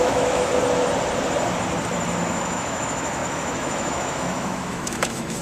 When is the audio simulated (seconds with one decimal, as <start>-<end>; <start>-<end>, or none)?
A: 0.0-0.5; 2.3-5.4